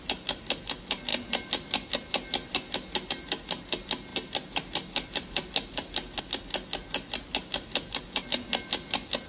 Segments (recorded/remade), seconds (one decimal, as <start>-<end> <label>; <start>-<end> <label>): 0.0-9.3 recorded